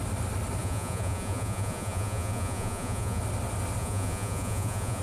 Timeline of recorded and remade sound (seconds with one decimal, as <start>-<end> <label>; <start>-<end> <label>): 0.0-0.6 recorded; 0.6-3.2 remade; 3.2-3.8 recorded; 3.8-5.0 remade